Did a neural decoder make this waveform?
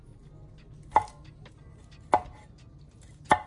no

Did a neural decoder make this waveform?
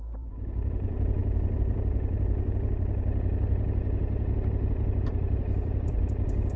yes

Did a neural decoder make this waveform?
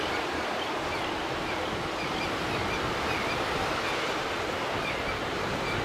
no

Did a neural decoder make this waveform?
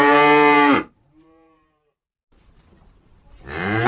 yes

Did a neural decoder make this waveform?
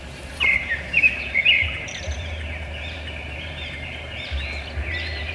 yes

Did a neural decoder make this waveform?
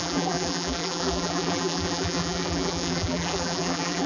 yes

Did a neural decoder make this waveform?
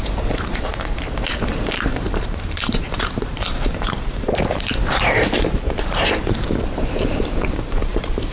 yes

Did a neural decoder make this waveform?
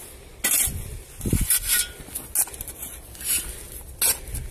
no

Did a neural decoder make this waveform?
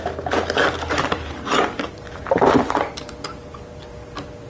yes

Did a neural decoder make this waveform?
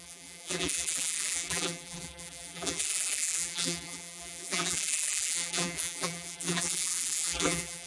yes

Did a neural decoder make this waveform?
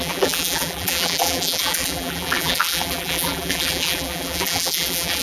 yes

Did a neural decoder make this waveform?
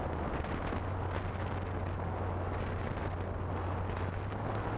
no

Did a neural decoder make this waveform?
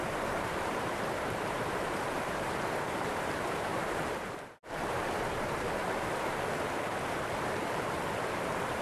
yes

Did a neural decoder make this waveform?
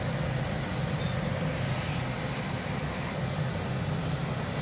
no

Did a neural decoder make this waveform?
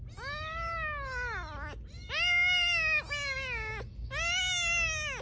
no